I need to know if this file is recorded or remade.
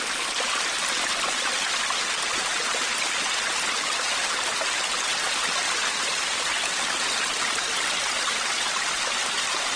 recorded